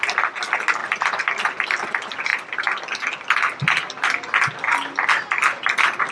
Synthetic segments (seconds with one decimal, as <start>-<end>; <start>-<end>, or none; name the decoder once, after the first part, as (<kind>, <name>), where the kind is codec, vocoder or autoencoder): 0.8-1.4 (vocoder, BigVGAN v2)